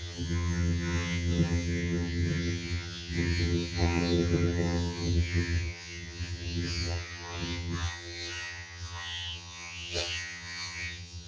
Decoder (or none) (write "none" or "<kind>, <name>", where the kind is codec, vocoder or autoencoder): vocoder, HiFi-GAN